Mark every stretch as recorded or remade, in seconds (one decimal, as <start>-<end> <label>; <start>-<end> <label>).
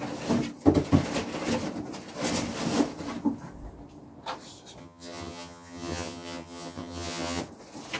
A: 0.0-4.8 recorded; 4.8-7.4 remade; 7.4-8.0 recorded